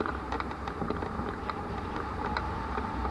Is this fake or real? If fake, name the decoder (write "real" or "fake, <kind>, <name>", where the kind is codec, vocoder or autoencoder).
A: fake, vocoder, BigVGAN v2